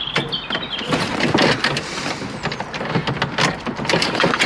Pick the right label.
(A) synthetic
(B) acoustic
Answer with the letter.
B